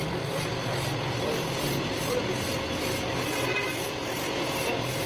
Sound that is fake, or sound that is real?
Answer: real